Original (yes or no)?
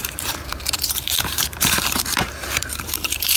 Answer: no